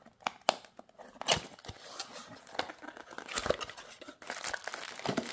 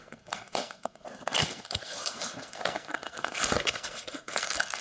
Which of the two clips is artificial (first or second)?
second